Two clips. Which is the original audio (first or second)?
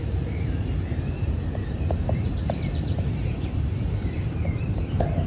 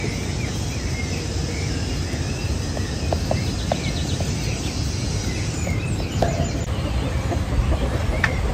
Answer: second